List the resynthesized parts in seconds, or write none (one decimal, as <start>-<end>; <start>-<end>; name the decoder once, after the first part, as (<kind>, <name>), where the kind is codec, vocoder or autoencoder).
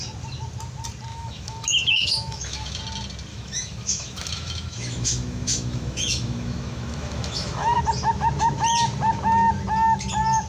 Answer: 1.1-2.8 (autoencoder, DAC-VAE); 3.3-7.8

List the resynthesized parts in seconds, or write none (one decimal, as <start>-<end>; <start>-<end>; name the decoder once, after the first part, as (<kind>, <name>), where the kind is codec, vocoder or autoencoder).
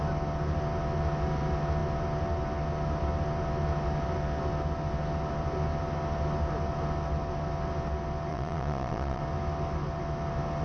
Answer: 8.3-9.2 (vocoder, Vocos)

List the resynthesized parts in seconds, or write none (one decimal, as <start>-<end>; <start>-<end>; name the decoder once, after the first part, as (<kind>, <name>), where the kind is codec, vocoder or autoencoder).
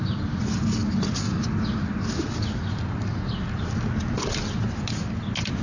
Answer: none